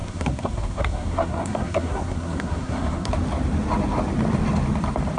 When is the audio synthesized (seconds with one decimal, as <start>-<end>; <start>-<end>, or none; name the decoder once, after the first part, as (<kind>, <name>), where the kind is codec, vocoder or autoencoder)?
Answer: 0.0-3.1 (codec, SNAC)